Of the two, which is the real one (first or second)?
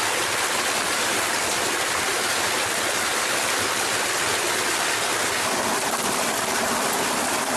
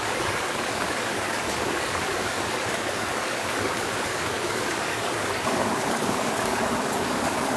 first